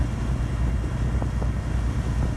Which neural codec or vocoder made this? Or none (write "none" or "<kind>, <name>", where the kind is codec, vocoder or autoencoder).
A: none